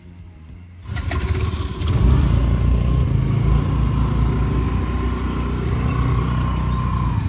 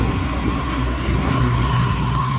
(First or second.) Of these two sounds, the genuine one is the first